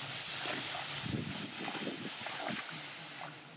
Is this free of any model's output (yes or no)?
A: yes